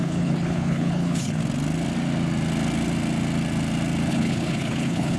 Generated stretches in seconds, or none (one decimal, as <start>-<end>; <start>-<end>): 0.0-1.4; 4.1-5.2